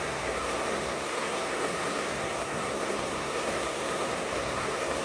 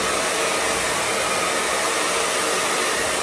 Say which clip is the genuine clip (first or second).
second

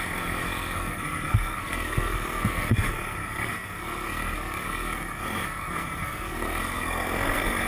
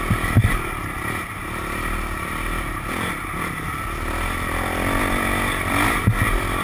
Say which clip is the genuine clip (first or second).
second